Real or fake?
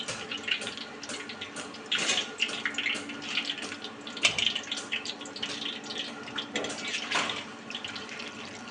real